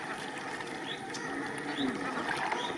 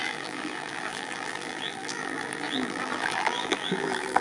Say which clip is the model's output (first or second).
second